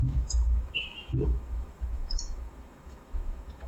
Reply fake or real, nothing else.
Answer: fake